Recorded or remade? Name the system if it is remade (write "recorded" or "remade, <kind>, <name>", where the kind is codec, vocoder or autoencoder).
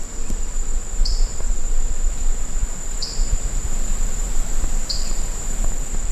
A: remade, vocoder, BigVGAN v2